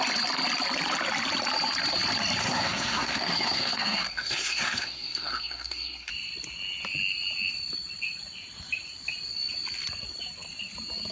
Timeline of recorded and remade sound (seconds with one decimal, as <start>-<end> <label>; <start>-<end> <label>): 0.0-2.4 recorded; 2.4-6.1 remade; 6.1-11.1 recorded